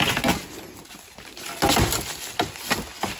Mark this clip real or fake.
real